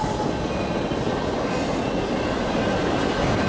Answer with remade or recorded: recorded